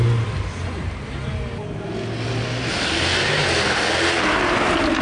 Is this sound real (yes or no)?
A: yes